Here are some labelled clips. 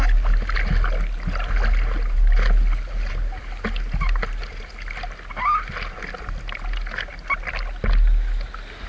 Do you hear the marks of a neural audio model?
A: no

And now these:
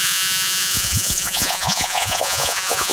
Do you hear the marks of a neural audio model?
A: yes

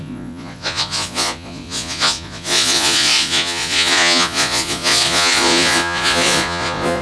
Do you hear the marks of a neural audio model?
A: yes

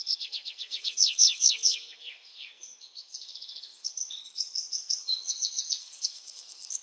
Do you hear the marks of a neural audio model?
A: yes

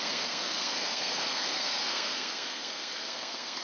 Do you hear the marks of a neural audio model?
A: yes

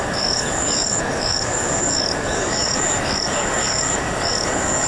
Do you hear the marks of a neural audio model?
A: yes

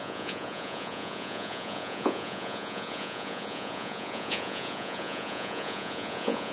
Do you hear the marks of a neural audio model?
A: yes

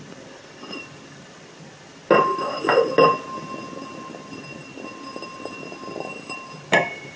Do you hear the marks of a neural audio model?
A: no